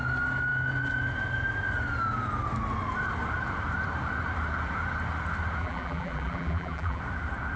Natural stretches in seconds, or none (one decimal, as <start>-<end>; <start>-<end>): 0.0-5.6; 7.0-7.6